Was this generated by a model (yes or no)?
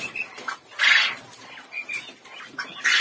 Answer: no